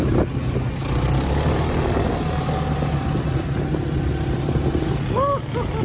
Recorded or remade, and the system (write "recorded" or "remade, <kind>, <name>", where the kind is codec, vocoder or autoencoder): recorded